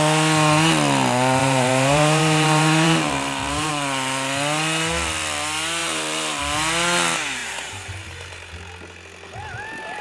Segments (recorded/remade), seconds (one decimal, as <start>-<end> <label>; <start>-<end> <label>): 0.0-1.4 recorded; 1.4-3.7 remade; 3.7-5.8 recorded; 5.8-6.4 remade; 6.4-7.4 recorded; 7.4-8.5 remade; 8.5-10.0 recorded